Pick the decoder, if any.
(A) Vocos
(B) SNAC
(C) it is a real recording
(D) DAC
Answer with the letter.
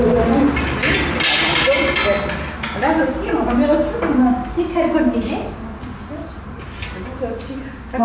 C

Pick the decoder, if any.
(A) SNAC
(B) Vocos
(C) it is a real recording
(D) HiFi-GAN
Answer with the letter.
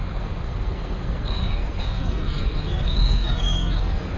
A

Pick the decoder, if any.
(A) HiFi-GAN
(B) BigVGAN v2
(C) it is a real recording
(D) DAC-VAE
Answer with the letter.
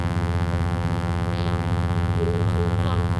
B